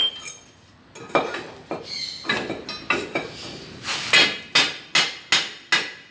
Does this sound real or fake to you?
real